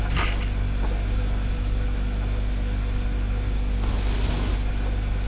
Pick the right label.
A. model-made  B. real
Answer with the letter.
B